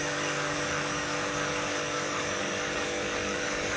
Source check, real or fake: fake